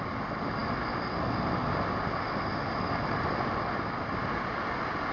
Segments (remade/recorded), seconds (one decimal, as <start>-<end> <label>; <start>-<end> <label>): 0.0-5.1 recorded